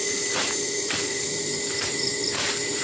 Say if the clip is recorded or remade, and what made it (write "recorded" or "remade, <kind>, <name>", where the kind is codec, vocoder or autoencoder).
remade, vocoder, BigVGAN v2